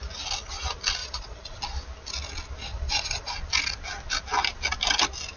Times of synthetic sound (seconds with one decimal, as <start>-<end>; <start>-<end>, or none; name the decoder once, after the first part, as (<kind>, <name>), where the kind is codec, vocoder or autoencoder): 1.0-1.6 (vocoder, Vocos); 2.6-3.3